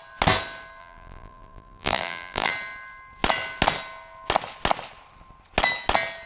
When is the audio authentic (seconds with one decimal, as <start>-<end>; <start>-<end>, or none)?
0.0-0.8; 2.5-6.3